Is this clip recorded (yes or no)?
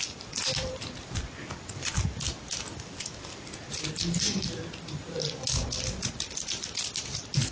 yes